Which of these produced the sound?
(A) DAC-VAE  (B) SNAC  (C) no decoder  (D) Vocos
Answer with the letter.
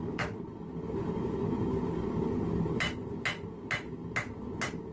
C